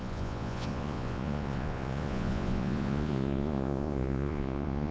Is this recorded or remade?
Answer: remade